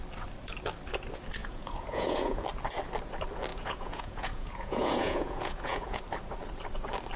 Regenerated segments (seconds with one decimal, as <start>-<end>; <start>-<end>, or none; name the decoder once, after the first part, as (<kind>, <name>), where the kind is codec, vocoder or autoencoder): 1.4-2.4 (vocoder, Vocos); 3.5-6.0